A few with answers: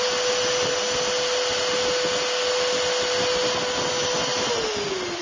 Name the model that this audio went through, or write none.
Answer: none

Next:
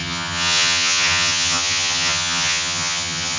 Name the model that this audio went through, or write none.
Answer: vocoder, HiFi-GAN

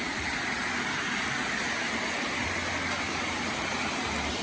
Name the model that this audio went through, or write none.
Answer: none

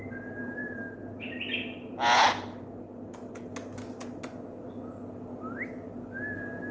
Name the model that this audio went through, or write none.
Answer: none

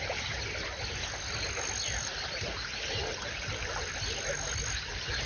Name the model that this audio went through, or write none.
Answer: none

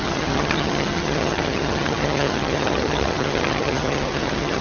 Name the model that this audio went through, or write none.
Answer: vocoder, HiFi-GAN